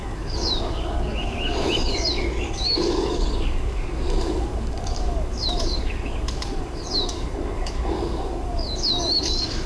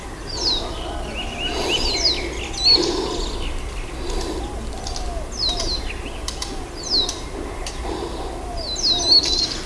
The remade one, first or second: first